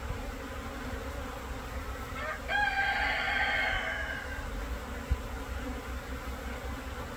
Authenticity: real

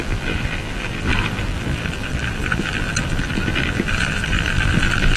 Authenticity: fake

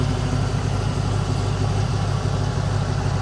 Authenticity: real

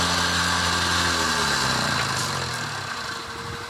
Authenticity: real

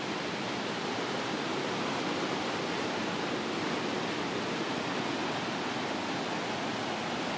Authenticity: real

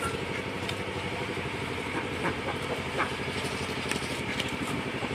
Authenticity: fake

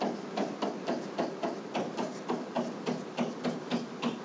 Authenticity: real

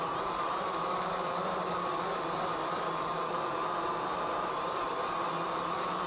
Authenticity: fake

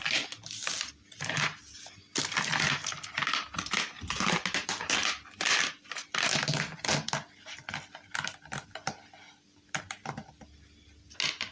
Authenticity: real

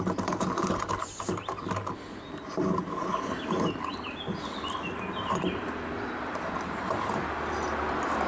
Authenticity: real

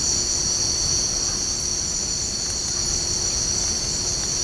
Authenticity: real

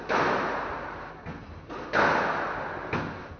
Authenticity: real